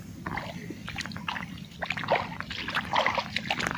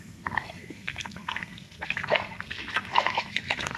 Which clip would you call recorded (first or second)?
first